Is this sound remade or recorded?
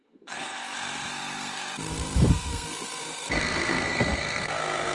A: remade